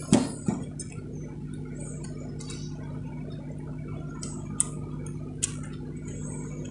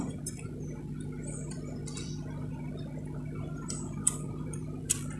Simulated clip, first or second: second